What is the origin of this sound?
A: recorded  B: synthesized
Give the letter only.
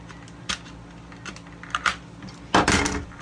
A